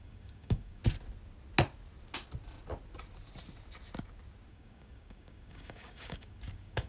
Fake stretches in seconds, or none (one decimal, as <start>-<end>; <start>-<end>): 0.0-0.8; 4.5-6.9